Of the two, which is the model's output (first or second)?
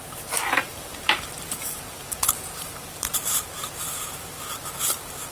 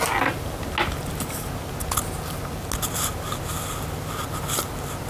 first